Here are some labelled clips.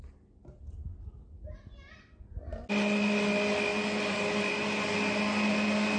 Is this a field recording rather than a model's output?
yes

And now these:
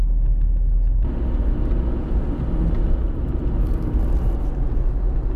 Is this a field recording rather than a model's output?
yes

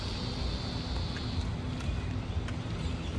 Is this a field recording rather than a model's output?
yes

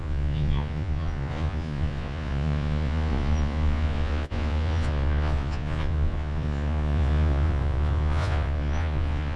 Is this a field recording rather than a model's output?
no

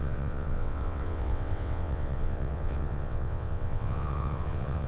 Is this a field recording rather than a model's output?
no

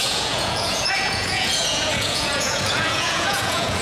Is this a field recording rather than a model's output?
no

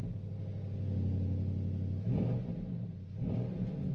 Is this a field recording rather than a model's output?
yes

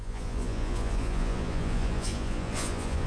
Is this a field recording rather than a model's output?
no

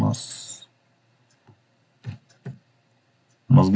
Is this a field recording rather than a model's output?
yes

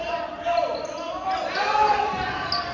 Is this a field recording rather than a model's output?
no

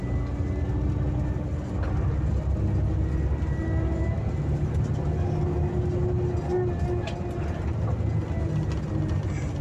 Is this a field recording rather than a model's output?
yes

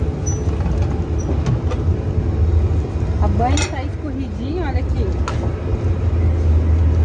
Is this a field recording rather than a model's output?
yes